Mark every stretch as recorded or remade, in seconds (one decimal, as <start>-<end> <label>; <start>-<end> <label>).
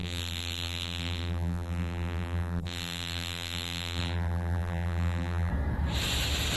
0.0-5.5 remade; 5.5-6.6 recorded